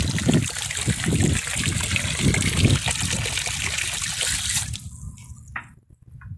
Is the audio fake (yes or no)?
no